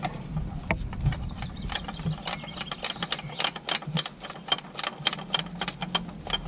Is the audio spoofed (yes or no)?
no